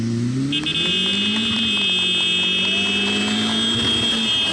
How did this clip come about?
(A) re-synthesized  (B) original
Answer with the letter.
B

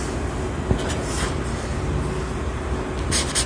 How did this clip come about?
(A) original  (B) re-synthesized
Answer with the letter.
A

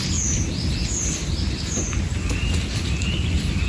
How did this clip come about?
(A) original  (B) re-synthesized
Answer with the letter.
A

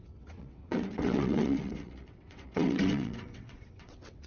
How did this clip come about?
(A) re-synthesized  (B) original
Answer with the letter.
A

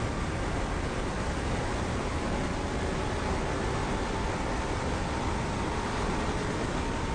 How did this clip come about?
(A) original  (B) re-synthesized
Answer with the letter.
A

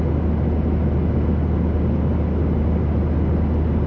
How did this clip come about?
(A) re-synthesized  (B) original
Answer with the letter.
B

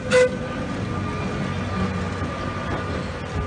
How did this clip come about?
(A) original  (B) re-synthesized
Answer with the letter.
A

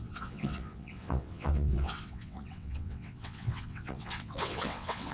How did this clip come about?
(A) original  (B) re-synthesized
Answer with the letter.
B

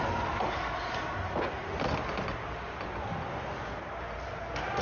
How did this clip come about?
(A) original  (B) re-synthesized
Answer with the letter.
A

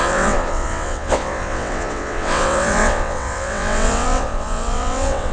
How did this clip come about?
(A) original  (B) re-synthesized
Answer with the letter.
B